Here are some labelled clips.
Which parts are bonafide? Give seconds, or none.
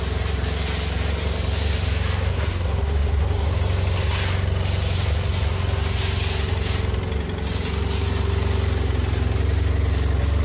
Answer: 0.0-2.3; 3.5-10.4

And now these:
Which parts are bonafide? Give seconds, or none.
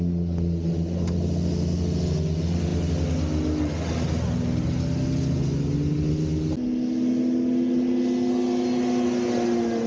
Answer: 0.0-9.9